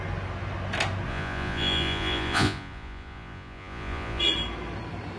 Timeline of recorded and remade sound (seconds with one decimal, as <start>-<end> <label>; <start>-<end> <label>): 0.0-1.1 recorded; 1.1-4.2 remade; 4.2-5.2 recorded